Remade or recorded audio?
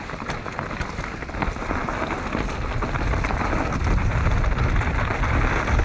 recorded